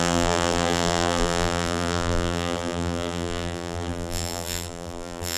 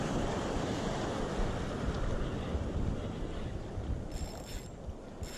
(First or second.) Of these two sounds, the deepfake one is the first